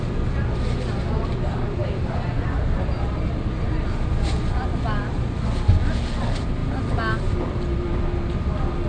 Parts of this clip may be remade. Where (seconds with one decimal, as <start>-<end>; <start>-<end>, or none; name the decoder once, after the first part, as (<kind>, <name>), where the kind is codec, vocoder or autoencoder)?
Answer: none